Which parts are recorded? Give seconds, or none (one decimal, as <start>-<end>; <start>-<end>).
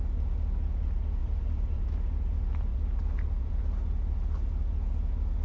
0.0-1.2; 1.8-2.7; 3.6-5.4